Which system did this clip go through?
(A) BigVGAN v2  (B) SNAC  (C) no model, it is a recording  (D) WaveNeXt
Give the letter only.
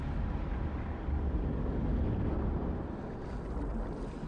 C